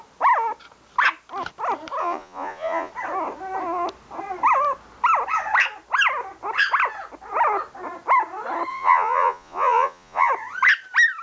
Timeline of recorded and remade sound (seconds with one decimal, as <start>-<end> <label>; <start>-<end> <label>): 0.0-2.0 recorded; 2.0-2.9 remade; 2.9-8.7 recorded; 8.7-10.3 remade; 10.3-11.2 recorded